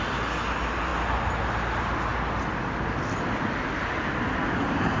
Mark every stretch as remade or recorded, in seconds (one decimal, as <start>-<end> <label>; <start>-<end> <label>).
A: 0.0-5.0 recorded